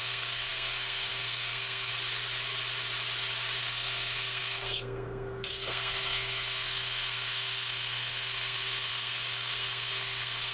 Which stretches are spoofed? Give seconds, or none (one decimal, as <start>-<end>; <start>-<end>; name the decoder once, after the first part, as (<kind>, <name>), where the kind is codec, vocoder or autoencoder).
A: 0.0-1.9 (codec, SNAC); 3.6-10.5